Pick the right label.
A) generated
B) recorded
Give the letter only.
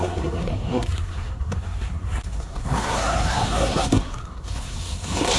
A